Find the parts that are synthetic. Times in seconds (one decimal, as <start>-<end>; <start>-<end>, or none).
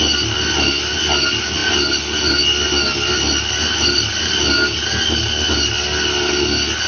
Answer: none